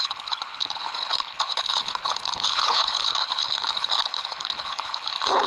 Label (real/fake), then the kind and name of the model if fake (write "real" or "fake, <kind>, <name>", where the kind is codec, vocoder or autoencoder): fake, codec, HILCodec